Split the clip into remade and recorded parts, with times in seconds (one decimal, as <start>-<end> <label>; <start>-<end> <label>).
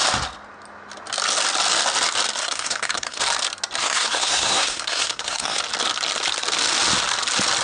0.0-2.4 recorded; 2.4-3.2 remade; 3.2-3.8 recorded; 3.8-5.6 remade; 5.6-7.6 recorded